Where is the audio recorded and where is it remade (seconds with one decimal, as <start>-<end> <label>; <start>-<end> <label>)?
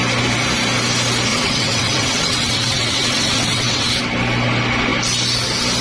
0.0-1.3 recorded; 1.3-3.9 remade; 3.9-5.8 recorded